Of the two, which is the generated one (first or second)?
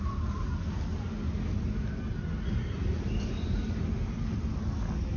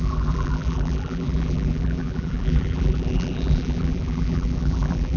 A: second